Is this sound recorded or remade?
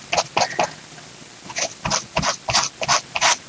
recorded